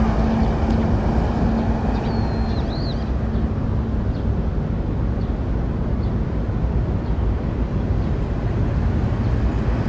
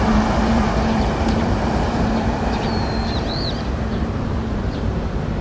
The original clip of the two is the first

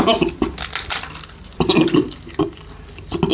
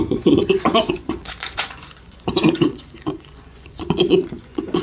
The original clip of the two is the first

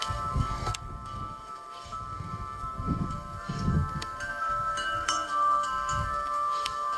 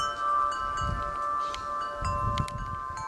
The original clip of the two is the second